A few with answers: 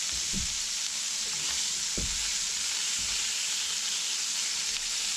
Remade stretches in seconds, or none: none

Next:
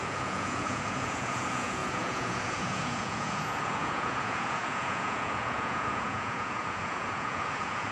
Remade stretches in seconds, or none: 0.0-7.9 (vocoder, Vocos)

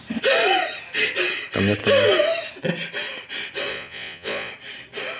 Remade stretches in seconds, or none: 3.7-4.5 (vocoder, Vocos)